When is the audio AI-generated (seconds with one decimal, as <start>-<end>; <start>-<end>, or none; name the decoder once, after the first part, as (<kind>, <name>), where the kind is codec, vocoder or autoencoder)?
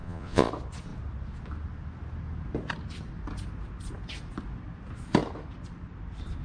0.0-0.5 (vocoder, Vocos)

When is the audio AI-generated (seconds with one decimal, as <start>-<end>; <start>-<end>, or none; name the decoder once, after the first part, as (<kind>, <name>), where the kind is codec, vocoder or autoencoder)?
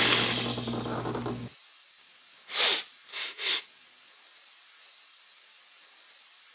3.1-3.6 (codec, SNAC)